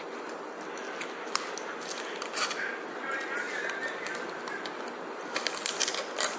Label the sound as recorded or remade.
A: recorded